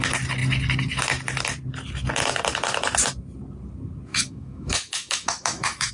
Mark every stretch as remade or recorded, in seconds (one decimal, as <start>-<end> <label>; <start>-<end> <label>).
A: 0.0-4.1 recorded; 4.1-5.9 remade